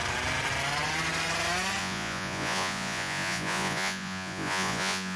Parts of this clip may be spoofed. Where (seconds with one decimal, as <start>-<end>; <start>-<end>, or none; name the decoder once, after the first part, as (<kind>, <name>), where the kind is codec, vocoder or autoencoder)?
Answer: 1.8-5.2 (vocoder, Vocos)